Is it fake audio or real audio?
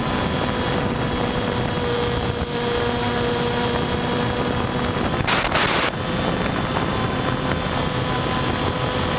real